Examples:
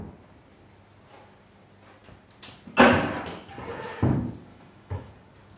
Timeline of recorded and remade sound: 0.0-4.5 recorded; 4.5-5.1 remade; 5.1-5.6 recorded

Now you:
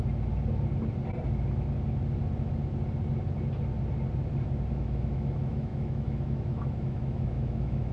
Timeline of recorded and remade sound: 0.0-4.7 recorded; 4.7-7.9 remade

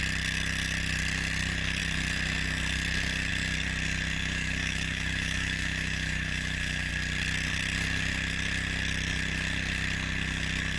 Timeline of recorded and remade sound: 0.0-4.2 recorded; 4.2-6.9 remade; 6.9-10.8 recorded

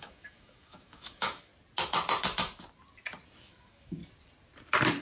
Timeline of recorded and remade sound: 0.0-1.5 remade; 1.5-3.4 recorded; 3.4-4.0 remade; 4.0-5.0 recorded

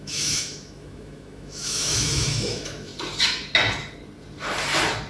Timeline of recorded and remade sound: 0.0-2.9 remade; 2.9-5.1 recorded